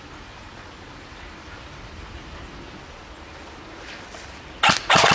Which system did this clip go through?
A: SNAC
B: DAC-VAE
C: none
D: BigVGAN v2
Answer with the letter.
C